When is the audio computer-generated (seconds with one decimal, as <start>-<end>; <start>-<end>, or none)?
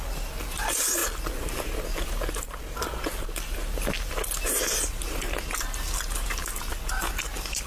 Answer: none